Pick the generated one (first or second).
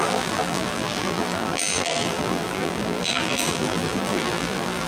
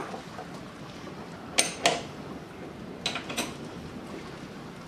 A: first